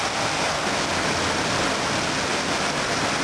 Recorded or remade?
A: recorded